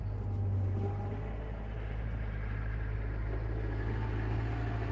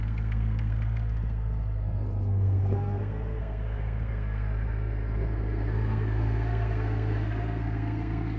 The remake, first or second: second